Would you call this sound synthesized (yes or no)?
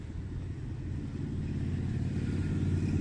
no